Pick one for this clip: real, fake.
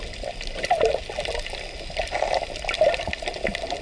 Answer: real